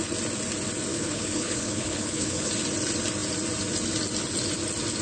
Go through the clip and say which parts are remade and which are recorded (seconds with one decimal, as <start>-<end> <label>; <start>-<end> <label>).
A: 0.0-0.9 recorded; 0.9-2.5 remade; 2.5-5.0 recorded